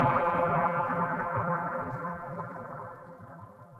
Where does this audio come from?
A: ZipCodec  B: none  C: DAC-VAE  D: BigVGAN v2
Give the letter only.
D